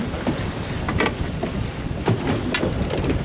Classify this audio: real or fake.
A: real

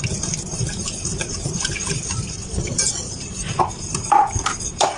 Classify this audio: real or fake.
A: real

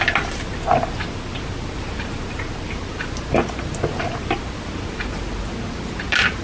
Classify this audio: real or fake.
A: real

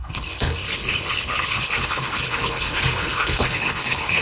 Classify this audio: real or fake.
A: fake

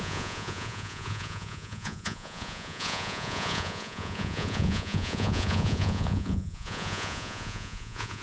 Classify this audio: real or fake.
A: fake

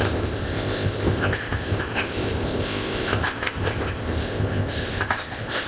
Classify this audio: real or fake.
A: fake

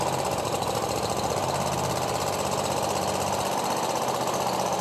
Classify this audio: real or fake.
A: real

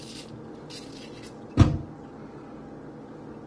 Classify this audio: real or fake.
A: real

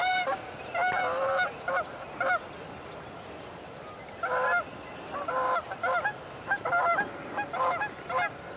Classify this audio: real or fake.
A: real